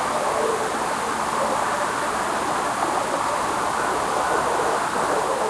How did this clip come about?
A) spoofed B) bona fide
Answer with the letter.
B